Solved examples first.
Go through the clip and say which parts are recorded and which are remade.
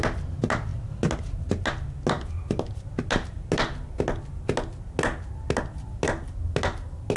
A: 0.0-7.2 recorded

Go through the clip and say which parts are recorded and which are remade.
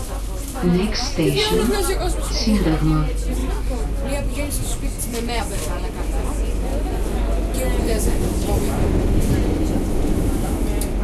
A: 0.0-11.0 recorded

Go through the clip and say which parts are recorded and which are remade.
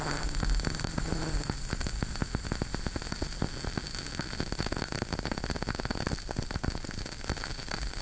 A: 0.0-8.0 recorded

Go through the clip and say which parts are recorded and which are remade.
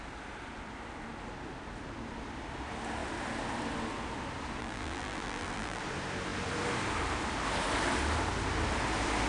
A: 0.0-4.6 recorded; 4.6-5.8 remade; 5.8-9.3 recorded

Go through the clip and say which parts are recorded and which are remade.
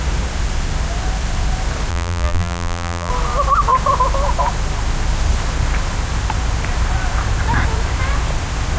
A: 0.0-1.9 recorded; 1.9-3.1 remade; 3.1-8.8 recorded